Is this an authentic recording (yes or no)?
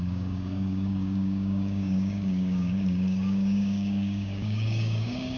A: no